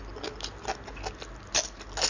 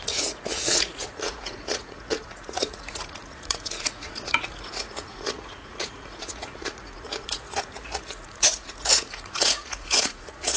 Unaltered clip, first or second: first